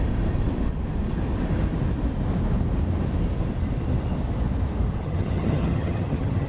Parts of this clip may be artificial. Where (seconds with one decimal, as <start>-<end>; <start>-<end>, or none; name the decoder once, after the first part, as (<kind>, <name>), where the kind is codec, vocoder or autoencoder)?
5.0-6.5 (vocoder, HiFi-GAN)